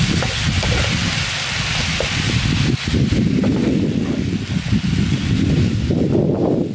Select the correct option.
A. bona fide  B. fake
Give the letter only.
A